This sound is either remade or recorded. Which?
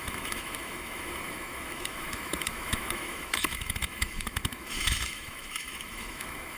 remade